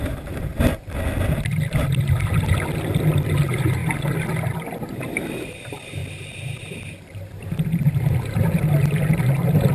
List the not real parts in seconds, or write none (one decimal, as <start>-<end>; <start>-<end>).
0.0-0.5; 3.4-3.8; 4.9-6.0; 7.3-9.7